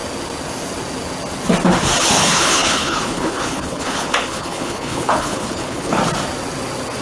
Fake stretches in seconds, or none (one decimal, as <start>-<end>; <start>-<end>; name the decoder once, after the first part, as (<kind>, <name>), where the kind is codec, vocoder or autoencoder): 2.0-6.0 (codec, HILCodec)